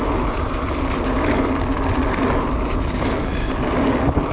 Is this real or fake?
real